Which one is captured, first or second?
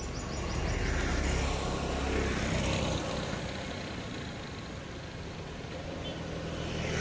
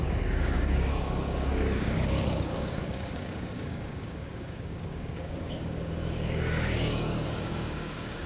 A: first